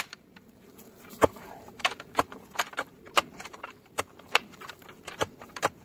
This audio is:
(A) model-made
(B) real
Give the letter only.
A